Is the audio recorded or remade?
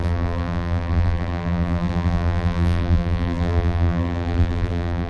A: remade